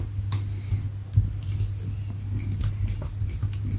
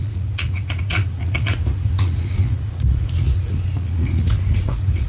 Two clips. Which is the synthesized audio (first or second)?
second